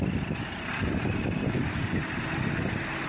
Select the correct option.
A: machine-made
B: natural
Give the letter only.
B